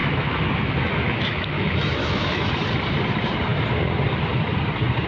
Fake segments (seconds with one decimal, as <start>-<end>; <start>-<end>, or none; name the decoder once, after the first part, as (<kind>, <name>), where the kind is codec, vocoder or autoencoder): 0.0-2.5 (autoencoder, DAC-VAE)